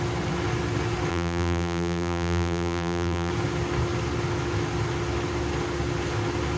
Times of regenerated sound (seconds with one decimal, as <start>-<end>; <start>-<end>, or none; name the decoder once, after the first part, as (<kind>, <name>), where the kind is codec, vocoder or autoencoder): 1.1-3.3 (vocoder, BigVGAN v2)